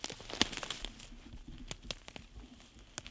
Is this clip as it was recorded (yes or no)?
yes